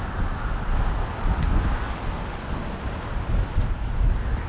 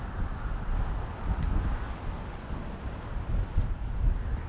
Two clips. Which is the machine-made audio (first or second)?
second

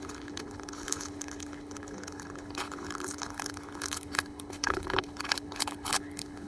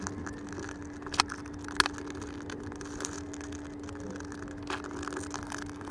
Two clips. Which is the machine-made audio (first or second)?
first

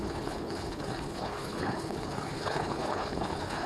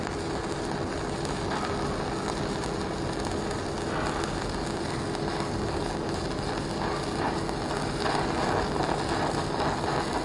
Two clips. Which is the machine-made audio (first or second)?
first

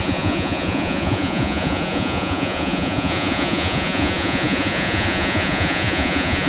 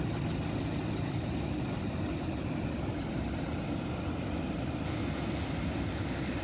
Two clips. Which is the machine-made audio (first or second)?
first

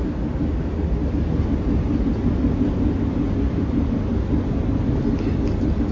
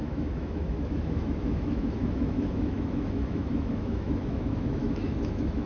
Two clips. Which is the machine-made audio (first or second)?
second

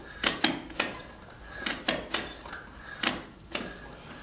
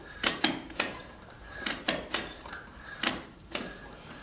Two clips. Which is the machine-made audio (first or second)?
second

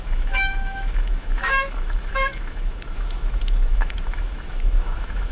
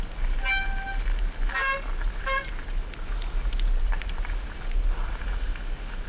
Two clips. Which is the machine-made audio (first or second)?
first